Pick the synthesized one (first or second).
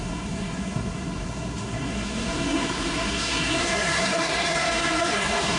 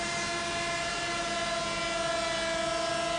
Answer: first